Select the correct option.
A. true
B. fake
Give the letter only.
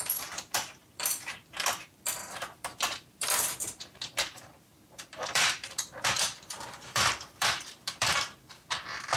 B